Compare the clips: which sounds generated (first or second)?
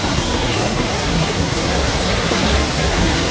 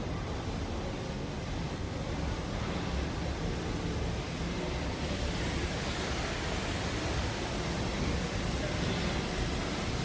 first